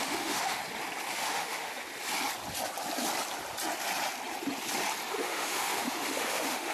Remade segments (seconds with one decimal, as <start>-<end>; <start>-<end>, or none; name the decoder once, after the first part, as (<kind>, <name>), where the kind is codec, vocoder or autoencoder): 0.0-0.6 (autoencoder, DAC-VAE); 1.1-1.7; 5.1-6.7